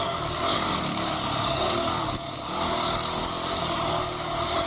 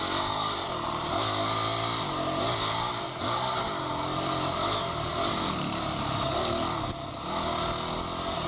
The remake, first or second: first